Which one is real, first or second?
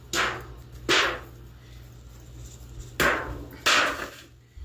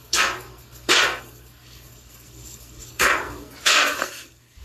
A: first